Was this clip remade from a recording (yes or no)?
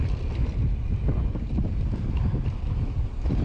no